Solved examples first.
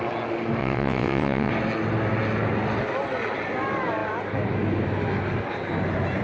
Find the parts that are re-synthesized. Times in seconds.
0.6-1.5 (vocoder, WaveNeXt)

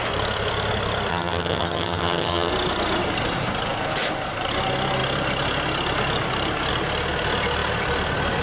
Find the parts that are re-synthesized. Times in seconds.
1.1-2.5 (vocoder, HiFi-GAN)

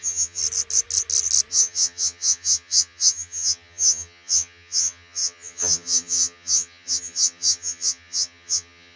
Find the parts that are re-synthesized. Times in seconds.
0.0-0.4 (vocoder, HiFi-GAN); 1.5-9.0

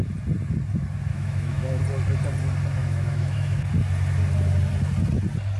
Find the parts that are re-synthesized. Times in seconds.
1.1-1.8 (autoencoder, DAC-VAE); 2.8-3.7